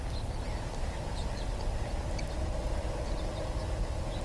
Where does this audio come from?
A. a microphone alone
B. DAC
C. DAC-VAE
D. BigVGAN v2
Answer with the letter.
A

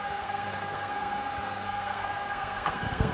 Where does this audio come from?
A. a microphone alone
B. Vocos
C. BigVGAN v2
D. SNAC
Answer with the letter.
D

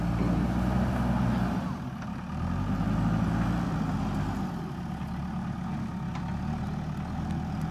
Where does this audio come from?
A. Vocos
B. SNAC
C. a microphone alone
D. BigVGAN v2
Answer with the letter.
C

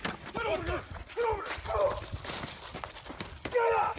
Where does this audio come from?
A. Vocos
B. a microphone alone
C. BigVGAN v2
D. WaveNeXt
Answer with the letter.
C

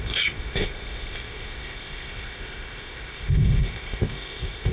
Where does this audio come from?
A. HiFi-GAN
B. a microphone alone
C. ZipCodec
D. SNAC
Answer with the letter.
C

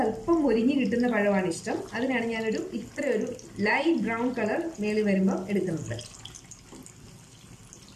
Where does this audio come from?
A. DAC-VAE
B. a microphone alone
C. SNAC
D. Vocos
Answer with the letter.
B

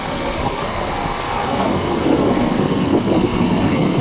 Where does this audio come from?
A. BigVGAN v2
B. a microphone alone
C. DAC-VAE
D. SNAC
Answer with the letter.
D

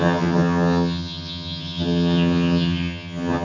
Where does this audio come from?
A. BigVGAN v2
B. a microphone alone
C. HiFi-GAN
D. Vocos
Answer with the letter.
C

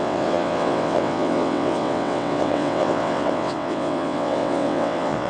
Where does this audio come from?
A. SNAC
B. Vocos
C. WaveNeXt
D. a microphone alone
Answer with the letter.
C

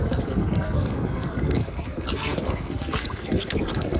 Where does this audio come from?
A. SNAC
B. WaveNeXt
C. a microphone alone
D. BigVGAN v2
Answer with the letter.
A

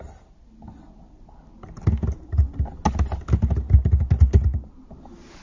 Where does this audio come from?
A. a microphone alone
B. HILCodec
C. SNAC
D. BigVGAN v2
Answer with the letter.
A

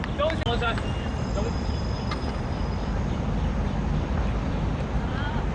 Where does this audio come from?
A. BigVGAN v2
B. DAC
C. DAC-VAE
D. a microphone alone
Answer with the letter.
D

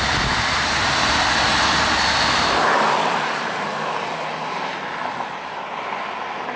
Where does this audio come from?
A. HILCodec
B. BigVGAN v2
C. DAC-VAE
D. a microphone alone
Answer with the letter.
D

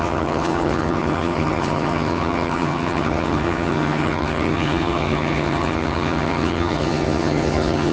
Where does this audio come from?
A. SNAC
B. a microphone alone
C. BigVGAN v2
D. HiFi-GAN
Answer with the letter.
D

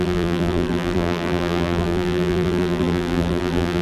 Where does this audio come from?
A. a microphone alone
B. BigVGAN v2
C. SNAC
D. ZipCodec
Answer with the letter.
B